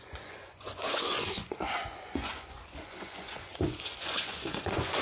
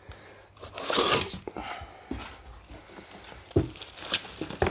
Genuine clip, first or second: second